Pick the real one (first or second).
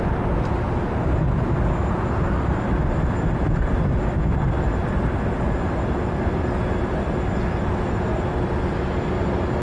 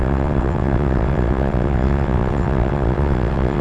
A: first